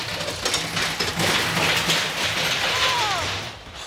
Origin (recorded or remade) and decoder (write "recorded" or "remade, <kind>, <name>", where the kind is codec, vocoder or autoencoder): recorded